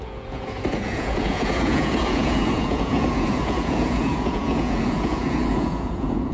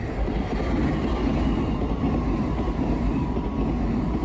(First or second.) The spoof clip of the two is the first